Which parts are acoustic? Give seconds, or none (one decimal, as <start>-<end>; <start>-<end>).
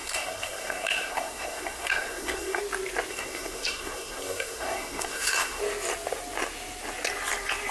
2.6-3.1; 5.6-7.7